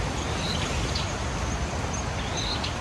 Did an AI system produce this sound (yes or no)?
no